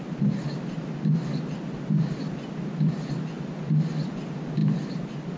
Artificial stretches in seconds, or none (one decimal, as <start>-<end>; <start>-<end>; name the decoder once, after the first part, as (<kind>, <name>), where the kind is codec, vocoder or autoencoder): none